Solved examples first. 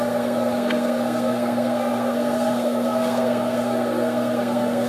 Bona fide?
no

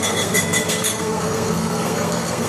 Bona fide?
no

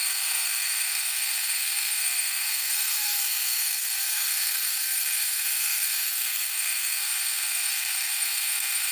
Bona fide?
no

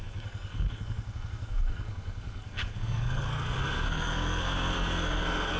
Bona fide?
no